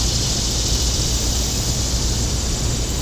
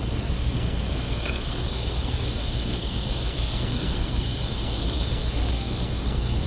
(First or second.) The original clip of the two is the first